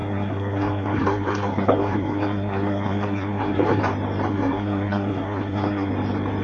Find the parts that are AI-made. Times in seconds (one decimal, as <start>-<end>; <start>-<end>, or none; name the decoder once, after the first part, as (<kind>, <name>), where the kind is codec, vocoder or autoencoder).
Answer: 0.0-3.8 (codec, SNAC); 4.3-5.9